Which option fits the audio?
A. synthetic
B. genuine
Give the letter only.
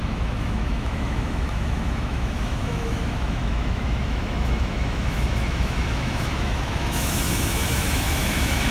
A